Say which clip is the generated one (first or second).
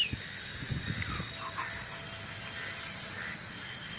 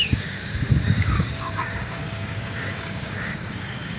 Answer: second